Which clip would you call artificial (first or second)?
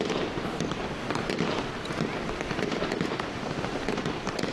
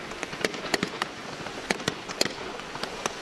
second